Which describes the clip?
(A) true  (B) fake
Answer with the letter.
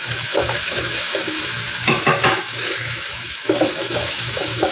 B